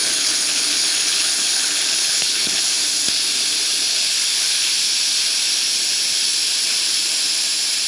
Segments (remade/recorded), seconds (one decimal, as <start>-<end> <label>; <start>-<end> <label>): 0.0-2.6 remade; 2.6-4.2 recorded; 4.2-4.7 remade; 4.7-7.9 recorded